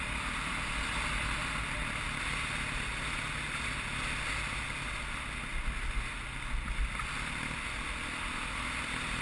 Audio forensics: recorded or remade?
recorded